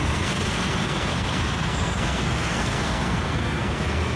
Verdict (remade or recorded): remade